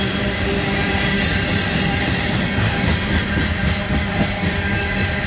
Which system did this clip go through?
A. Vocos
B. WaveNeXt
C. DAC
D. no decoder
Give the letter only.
D